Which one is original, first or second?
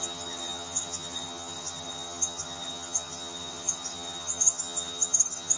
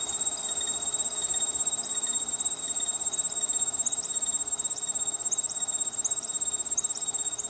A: second